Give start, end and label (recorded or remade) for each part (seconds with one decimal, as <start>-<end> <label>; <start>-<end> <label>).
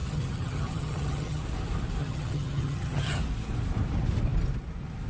0.0-1.4 remade; 1.4-2.0 recorded; 2.0-3.2 remade; 3.2-5.1 recorded